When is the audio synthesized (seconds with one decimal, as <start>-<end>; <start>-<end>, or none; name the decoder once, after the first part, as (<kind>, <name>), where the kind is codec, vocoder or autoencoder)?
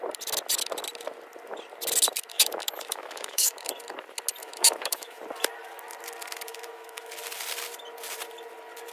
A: 2.3-3.7 (autoencoder, DAC-VAE); 4.4-5.2; 6.5-7.1